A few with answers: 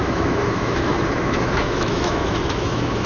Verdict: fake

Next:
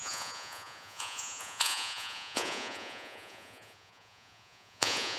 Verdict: fake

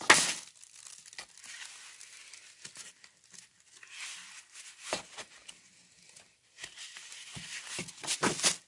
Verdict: real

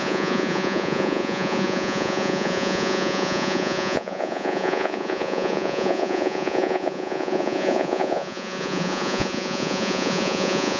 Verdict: fake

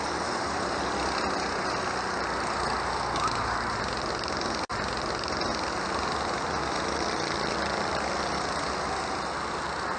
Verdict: real